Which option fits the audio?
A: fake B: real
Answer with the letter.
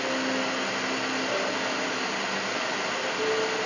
B